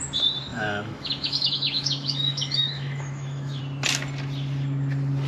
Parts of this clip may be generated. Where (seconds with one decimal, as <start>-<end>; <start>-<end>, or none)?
0.5-3.6